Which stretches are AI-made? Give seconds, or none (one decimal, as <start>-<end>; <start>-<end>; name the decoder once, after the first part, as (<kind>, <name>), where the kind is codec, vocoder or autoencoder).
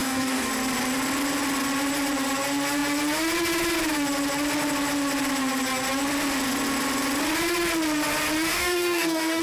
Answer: 0.0-0.5 (codec, DAC); 8.5-9.4